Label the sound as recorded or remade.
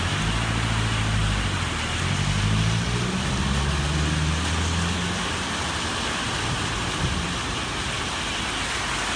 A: recorded